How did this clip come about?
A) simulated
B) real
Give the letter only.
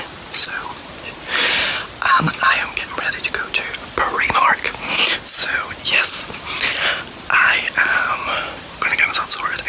B